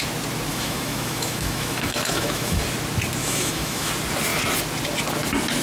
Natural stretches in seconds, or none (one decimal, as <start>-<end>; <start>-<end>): 0.0-0.5; 2.6-3.2; 3.9-5.6